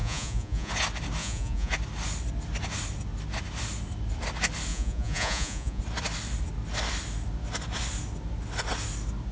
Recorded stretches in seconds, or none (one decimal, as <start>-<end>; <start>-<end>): 0.7-1.2; 1.7-4.7; 5.8-9.3

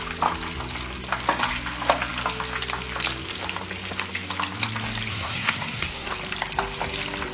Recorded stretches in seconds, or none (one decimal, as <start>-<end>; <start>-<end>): 0.0-5.1; 6.1-7.3

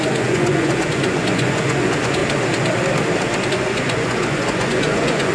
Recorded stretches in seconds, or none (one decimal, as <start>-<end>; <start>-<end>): 2.2-3.5

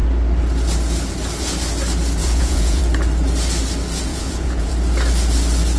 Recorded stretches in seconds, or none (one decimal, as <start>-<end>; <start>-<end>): 0.0-2.2; 2.8-4.1; 4.7-5.8

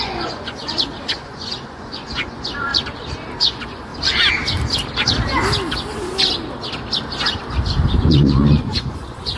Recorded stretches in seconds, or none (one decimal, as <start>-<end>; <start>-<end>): 0.6-1.1; 2.7-3.4; 3.9-8.1